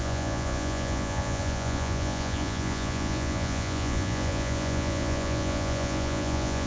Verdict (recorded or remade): remade